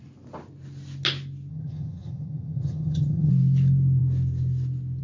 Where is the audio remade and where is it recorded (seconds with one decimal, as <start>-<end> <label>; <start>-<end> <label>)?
0.0-1.5 recorded; 1.5-3.3 remade; 3.3-5.0 recorded